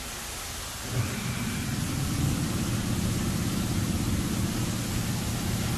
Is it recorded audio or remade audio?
recorded